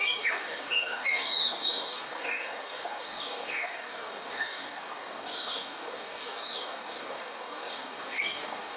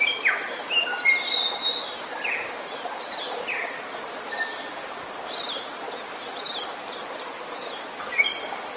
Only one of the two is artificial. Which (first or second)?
first